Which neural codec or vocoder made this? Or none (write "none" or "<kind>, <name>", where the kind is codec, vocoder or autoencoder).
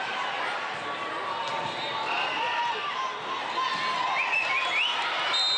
none